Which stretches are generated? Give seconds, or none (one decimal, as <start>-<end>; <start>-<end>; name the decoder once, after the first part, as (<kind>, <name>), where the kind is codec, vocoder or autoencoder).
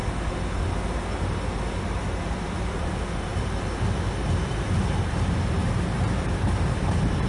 1.8-3.3 (vocoder, BigVGAN v2); 4.2-7.3